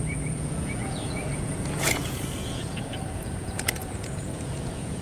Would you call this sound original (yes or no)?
no